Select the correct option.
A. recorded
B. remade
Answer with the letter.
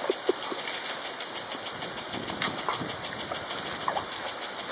A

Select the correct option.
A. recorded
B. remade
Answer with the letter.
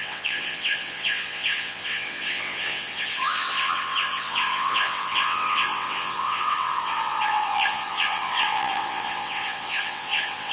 B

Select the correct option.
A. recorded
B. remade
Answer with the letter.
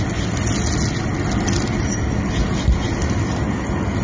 A